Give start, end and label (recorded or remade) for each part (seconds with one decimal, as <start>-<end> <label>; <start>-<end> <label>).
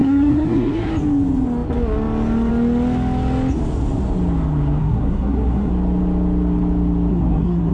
0.0-0.9 remade; 0.9-4.8 recorded; 4.8-5.7 remade; 5.7-7.1 recorded; 7.1-7.7 remade